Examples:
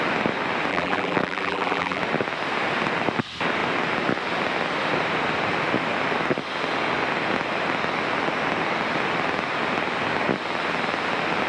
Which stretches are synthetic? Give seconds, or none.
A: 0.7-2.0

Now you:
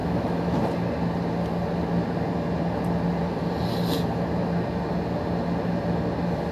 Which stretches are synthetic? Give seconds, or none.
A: 0.0-0.6

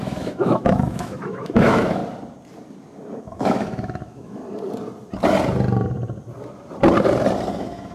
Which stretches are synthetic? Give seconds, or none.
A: 0.0-2.0; 3.2-4.4; 7.5-7.9

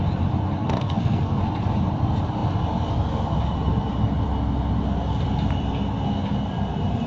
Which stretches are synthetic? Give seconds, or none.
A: 0.6-1.4

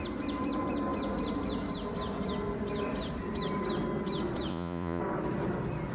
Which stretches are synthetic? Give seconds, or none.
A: 4.5-5.0